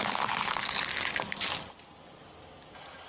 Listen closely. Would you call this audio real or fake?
real